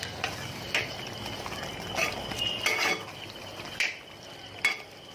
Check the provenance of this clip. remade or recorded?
recorded